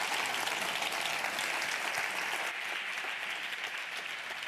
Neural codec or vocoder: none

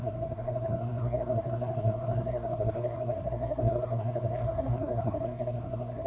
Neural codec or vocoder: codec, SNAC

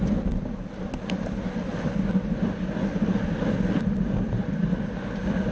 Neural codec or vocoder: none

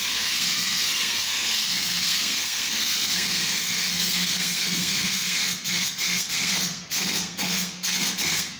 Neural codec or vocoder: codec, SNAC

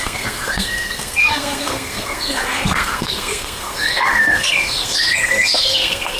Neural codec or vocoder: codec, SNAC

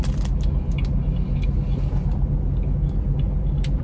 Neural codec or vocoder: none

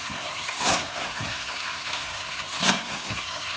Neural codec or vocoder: codec, SNAC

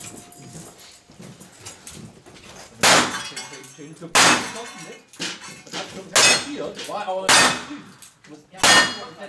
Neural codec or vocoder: none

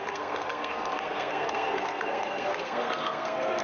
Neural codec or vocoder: codec, SNAC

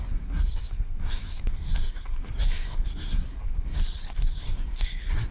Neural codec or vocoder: codec, SNAC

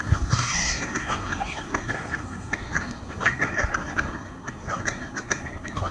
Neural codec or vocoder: codec, SNAC